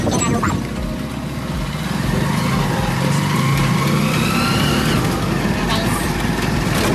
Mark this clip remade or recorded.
recorded